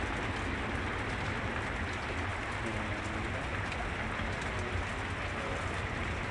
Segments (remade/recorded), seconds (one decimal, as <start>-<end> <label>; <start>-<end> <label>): 0.0-6.3 recorded